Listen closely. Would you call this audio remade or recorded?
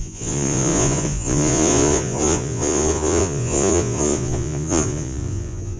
remade